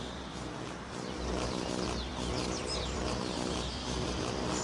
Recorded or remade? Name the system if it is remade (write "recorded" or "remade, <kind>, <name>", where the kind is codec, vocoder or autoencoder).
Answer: recorded